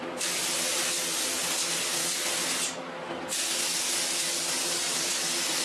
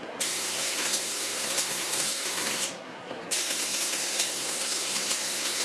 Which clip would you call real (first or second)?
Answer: first